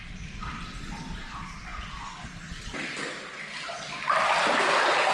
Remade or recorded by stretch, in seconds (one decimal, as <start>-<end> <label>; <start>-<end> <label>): 0.0-5.1 recorded